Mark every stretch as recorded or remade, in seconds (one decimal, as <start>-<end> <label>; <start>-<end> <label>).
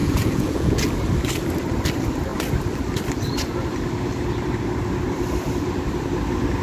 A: 0.0-0.9 remade; 0.9-6.6 recorded